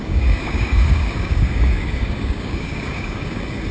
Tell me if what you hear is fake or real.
fake